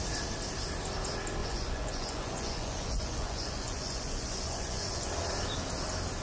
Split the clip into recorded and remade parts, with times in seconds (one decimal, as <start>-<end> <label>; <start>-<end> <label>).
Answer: 0.0-1.4 recorded; 1.4-5.1 remade; 5.1-6.2 recorded